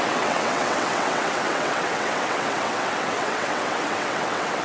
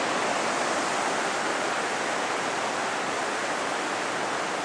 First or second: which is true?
second